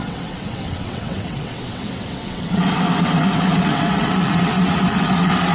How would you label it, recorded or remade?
remade